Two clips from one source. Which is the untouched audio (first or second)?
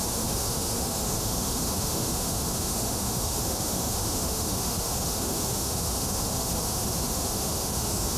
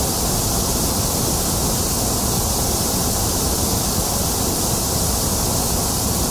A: second